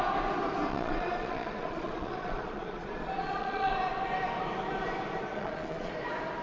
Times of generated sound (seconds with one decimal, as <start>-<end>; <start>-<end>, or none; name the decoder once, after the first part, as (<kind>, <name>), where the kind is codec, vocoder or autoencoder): 0.7-3.7 (vocoder, Vocos); 5.3-5.9